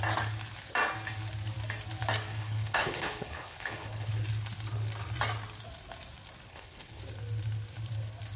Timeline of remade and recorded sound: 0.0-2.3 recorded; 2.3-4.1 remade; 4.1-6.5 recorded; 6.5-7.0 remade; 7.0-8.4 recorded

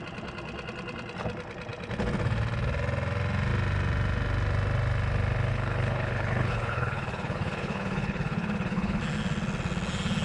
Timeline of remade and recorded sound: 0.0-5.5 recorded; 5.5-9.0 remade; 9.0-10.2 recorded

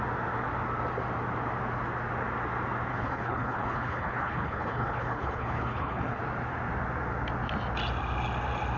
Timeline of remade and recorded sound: 0.0-2.9 recorded; 2.9-6.2 remade; 6.2-8.8 recorded

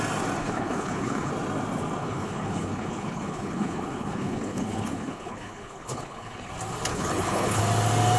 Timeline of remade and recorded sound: 0.0-0.4 recorded; 0.4-1.3 remade; 1.3-2.0 recorded; 2.0-6.5 remade; 6.5-6.9 recorded; 6.9-7.6 remade; 7.6-8.2 recorded

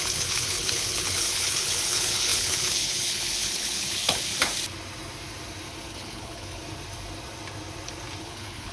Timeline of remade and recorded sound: 0.0-4.3 remade; 4.3-5.9 recorded; 5.9-6.6 remade; 6.6-8.2 recorded; 8.2-8.7 remade